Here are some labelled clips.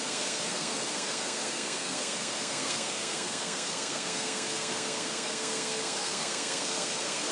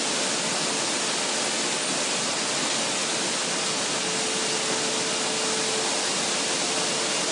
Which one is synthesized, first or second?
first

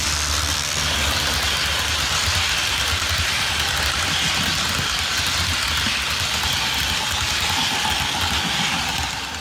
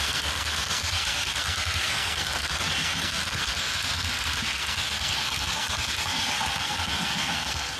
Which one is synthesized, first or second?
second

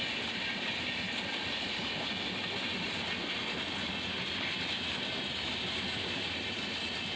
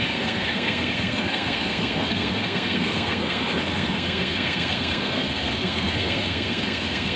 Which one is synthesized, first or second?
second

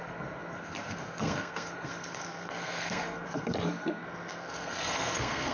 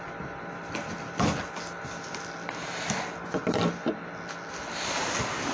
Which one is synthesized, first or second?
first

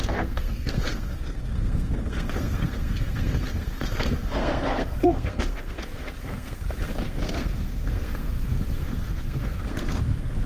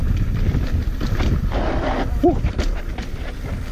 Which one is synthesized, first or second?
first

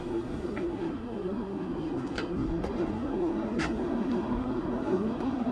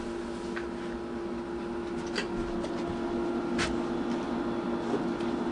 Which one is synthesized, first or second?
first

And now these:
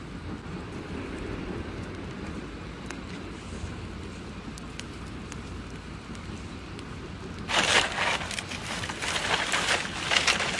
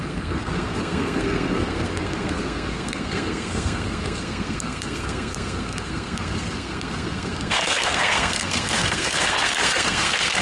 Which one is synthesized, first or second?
second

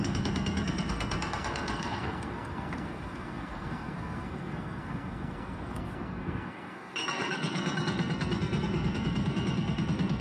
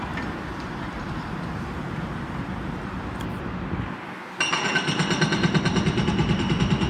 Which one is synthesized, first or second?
first